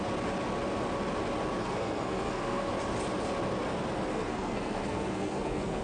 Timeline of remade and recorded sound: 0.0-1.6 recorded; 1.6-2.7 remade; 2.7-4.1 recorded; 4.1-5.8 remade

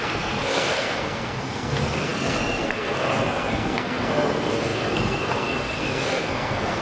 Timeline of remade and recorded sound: 0.0-6.8 remade

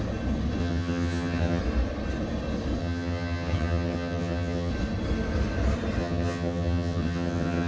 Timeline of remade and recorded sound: 0.0-0.6 recorded; 0.6-1.6 remade; 1.6-2.8 recorded; 2.8-4.7 remade; 4.7-6.0 recorded; 6.0-7.7 remade

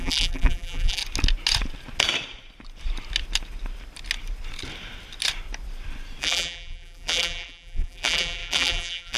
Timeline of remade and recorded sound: 0.0-1.0 remade; 1.0-6.2 recorded; 6.2-9.2 remade

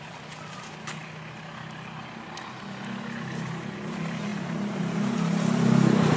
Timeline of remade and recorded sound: 0.0-4.3 recorded; 4.3-4.8 remade; 4.8-6.2 recorded

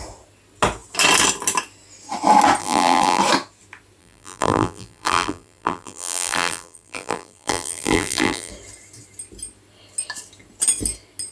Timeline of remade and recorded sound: 0.0-2.6 recorded; 2.6-3.2 remade; 3.2-4.0 recorded; 4.0-8.5 remade; 8.5-11.3 recorded

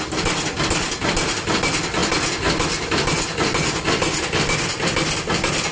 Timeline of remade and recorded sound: 0.0-5.7 recorded

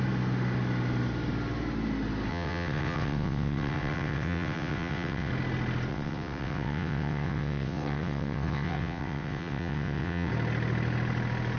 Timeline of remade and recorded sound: 0.0-2.3 recorded; 2.3-5.3 remade; 5.3-5.9 recorded; 5.9-10.3 remade; 10.3-11.6 recorded